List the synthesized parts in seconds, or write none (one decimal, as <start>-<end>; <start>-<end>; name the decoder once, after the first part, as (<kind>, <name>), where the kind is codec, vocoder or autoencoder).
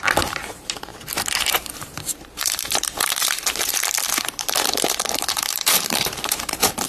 0.0-0.9 (vocoder, BigVGAN v2); 1.5-6.9